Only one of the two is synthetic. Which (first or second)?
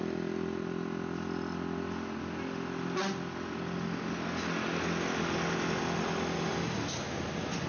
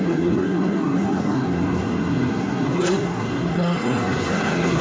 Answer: second